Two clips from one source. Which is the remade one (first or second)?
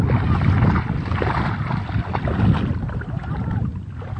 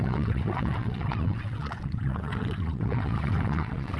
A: second